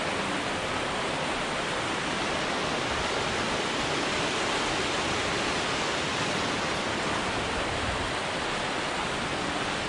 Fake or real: real